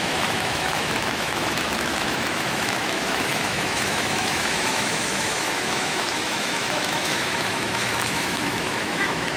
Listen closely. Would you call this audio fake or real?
fake